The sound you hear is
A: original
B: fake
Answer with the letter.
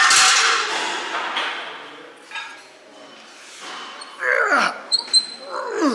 A